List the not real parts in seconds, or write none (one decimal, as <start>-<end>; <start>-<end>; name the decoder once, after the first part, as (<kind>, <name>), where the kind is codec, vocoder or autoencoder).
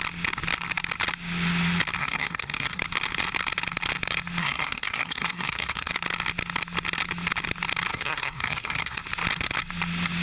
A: 2.0-2.8 (codec, SNAC); 4.4-5.9; 7.9-9.0